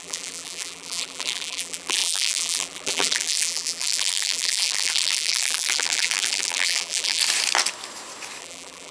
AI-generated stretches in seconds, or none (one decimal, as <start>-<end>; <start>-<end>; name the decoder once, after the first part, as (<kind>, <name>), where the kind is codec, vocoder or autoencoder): 0.0-7.2 (vocoder, BigVGAN v2); 8.4-8.9